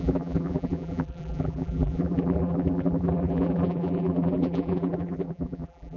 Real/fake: fake